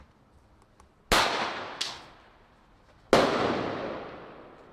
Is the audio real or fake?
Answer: real